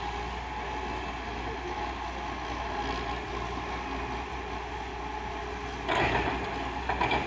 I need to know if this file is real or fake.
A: real